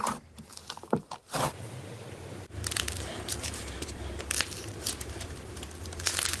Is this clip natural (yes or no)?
no